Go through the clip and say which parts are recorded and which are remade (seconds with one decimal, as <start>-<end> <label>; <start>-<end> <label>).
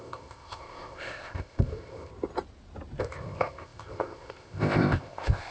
0.0-2.1 remade; 2.1-3.0 recorded; 3.0-5.5 remade